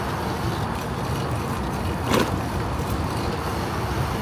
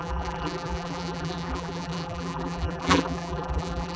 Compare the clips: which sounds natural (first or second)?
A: first